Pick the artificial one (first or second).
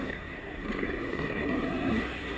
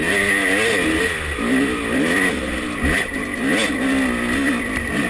first